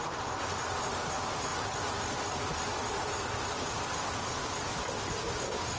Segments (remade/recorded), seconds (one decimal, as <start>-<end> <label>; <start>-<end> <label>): 0.0-1.5 remade; 1.5-3.5 recorded; 3.5-4.7 remade; 4.7-5.8 recorded